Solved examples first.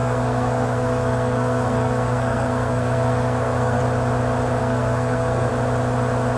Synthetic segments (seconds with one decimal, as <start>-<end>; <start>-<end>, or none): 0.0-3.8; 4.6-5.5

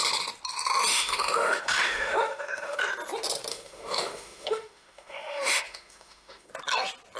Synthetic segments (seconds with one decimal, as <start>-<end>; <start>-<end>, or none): 0.9-2.8; 3.5-6.5

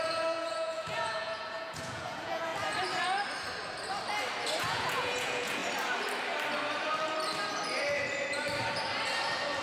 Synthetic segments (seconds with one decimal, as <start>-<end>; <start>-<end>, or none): 0.0-2.5; 4.6-5.6

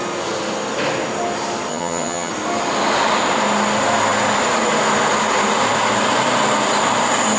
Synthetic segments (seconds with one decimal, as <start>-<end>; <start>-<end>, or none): 1.7-2.3